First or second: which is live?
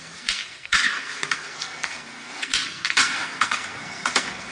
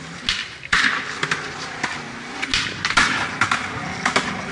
second